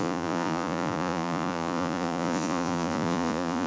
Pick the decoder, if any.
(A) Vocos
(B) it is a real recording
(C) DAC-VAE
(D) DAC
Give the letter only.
A